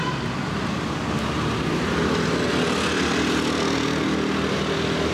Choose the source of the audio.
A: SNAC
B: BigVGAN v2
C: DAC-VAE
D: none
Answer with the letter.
D